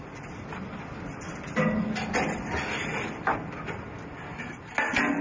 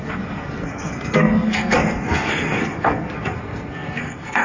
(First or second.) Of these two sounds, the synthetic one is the second